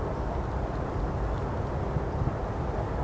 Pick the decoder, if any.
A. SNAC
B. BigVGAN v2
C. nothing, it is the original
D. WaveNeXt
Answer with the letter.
C